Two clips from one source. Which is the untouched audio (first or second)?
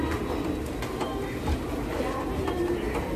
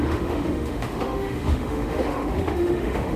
first